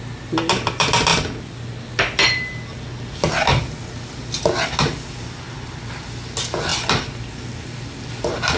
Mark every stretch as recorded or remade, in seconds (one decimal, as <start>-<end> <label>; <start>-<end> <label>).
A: 0.0-8.6 recorded